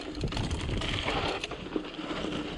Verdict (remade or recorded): recorded